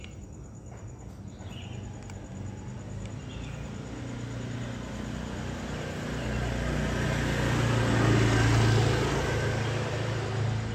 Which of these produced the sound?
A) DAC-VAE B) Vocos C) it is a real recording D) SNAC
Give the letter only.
C